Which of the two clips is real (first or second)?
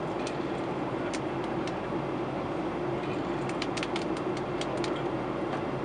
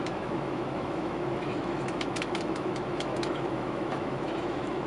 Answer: first